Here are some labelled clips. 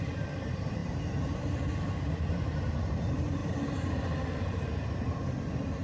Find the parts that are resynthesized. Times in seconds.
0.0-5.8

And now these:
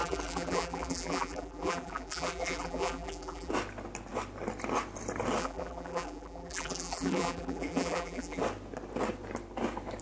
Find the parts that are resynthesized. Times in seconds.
0.0-3.5; 5.4-8.4

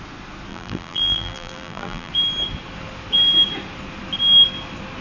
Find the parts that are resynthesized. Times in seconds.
0.5-2.1